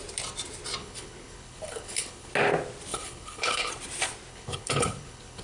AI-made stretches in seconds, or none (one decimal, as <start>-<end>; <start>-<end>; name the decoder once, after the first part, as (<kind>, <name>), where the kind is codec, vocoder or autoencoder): 0.8-2.3 (codec, HILCodec); 2.9-3.7; 4.3-5.4